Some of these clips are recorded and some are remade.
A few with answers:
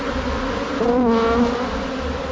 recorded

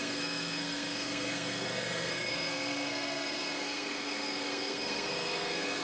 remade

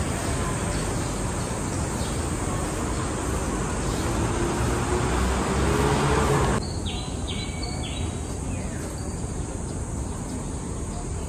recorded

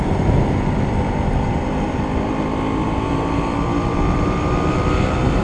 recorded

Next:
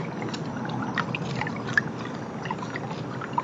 recorded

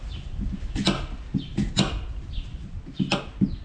recorded